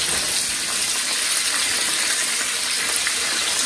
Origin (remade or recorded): recorded